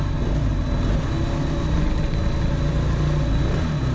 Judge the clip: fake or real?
real